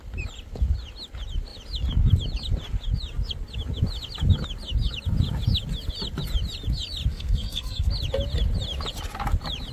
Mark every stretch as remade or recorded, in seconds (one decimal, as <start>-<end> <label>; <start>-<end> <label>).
0.0-7.1 recorded; 7.1-7.9 remade; 7.9-9.7 recorded